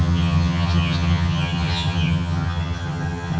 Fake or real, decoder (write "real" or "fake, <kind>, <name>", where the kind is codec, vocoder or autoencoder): fake, vocoder, HiFi-GAN